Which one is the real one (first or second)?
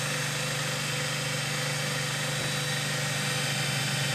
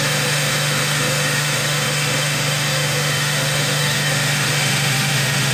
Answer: first